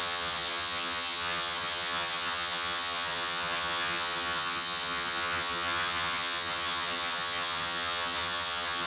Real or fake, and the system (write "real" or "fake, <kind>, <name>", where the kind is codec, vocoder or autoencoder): fake, vocoder, HiFi-GAN